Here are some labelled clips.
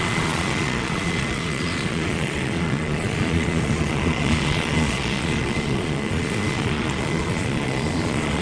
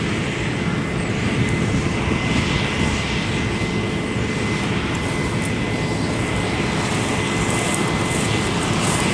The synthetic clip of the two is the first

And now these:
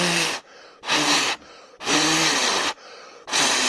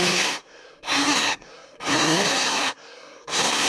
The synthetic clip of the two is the second